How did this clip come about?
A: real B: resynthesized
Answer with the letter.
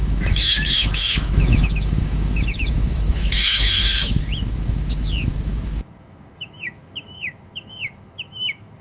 B